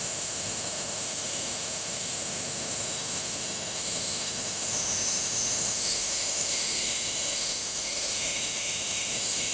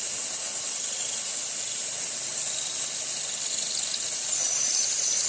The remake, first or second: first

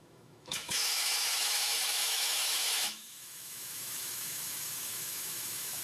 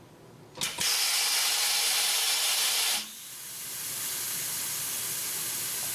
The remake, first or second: first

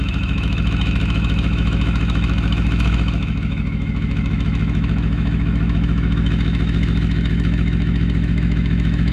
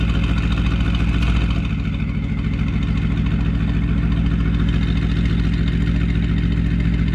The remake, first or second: first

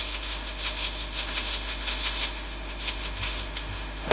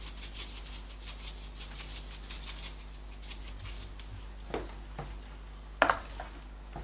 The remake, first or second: first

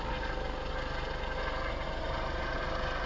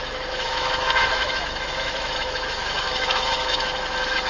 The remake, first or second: second